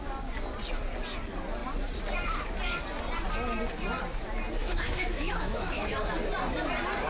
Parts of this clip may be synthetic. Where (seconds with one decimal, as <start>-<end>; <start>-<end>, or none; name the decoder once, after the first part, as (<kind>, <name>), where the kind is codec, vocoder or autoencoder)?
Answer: 4.6-5.8 (autoencoder, DAC-VAE)